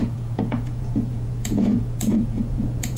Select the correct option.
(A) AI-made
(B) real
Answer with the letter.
A